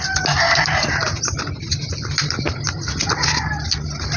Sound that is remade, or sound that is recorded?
recorded